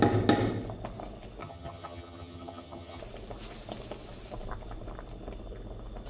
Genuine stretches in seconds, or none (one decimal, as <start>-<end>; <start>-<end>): 0.0-1.4; 3.0-6.1